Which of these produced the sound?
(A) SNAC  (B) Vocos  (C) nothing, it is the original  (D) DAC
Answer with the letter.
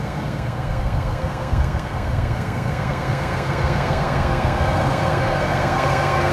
A